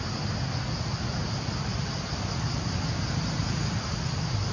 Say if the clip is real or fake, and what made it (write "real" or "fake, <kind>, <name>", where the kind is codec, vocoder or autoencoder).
real